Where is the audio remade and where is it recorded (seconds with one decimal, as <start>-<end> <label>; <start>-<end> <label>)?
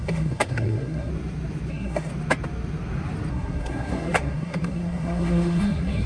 0.0-1.1 remade; 1.1-1.7 recorded; 1.7-2.1 remade; 2.1-3.3 recorded; 3.3-6.1 remade